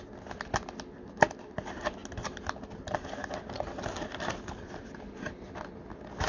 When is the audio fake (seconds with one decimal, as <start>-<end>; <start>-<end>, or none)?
none